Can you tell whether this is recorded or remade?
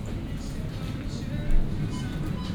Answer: recorded